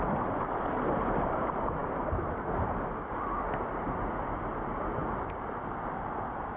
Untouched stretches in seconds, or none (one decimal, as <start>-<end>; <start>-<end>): 0.0-6.6